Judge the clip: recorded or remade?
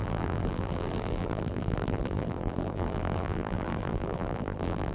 remade